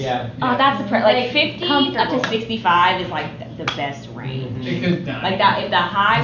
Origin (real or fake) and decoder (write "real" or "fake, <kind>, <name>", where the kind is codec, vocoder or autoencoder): real